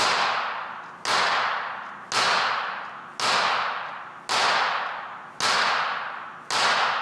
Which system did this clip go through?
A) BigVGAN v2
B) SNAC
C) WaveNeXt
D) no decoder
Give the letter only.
D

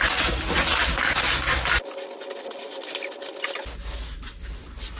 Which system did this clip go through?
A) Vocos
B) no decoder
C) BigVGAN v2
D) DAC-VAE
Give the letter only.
B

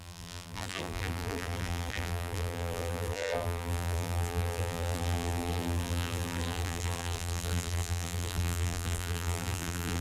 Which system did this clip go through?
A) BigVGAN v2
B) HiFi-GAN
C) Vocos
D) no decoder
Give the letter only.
A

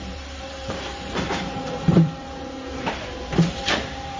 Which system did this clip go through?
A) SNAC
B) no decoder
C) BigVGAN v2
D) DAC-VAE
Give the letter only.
C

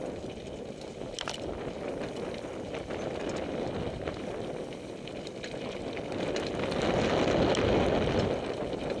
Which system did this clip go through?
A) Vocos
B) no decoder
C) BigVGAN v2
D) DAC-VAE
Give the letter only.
B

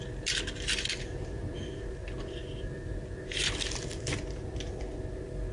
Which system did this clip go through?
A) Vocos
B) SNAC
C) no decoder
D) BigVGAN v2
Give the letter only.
C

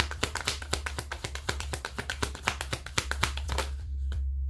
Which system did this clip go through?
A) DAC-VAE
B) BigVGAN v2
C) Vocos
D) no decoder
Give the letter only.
B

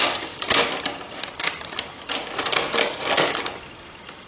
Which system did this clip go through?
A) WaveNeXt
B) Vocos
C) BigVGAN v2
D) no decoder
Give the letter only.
D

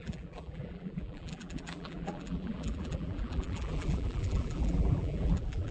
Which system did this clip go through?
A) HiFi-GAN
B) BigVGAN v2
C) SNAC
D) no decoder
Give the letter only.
B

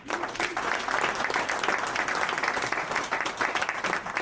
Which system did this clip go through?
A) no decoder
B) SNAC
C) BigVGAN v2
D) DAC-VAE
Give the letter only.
C